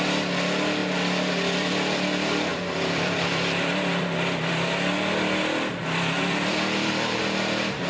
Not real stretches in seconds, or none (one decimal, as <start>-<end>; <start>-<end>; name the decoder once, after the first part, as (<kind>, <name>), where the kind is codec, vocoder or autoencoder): 2.5-4.5 (vocoder, BigVGAN v2); 5.8-7.2